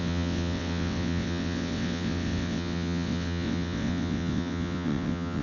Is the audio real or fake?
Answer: fake